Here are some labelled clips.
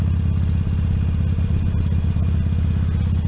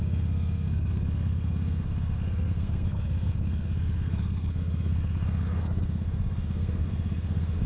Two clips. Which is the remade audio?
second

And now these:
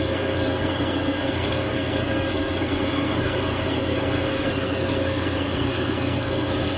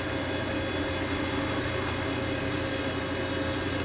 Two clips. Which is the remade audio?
first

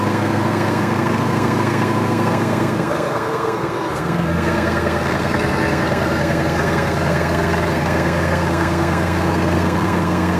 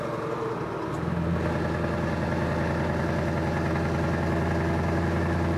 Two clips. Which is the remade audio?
first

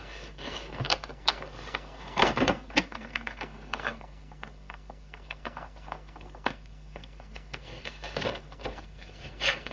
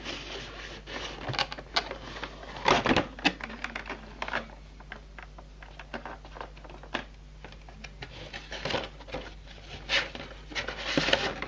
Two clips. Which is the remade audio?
first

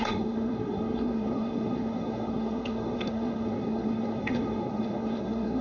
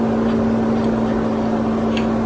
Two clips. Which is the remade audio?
first